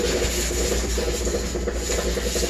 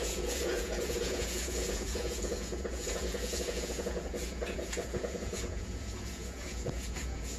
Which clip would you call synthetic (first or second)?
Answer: second